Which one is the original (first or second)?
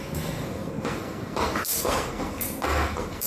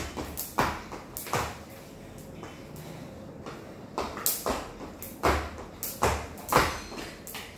second